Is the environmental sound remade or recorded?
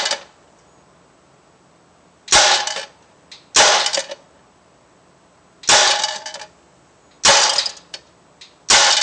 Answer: recorded